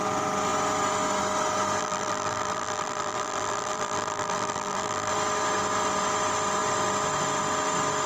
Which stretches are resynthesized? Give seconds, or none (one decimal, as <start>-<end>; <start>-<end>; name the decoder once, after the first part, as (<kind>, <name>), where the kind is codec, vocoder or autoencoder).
1.8-5.1 (vocoder, BigVGAN v2)